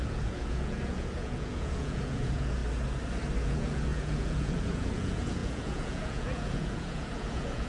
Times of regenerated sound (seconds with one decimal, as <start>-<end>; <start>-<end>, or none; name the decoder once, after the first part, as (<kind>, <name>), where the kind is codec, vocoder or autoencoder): 0.0-2.6 (vocoder, Vocos); 3.4-7.7